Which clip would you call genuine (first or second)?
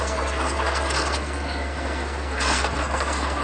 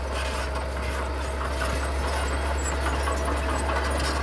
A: second